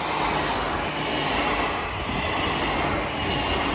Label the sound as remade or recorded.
recorded